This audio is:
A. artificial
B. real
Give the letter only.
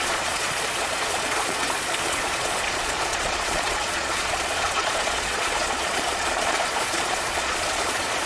A